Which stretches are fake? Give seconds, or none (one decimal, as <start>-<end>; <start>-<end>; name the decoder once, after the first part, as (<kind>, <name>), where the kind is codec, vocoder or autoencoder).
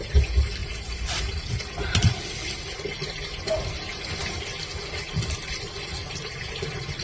0.6-1.5 (vocoder, BigVGAN v2)